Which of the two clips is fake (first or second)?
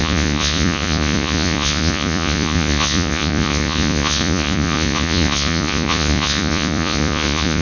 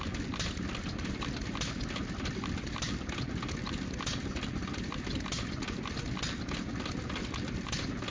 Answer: first